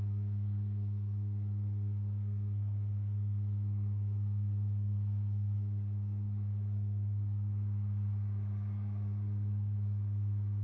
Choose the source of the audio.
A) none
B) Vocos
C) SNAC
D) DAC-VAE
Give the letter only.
C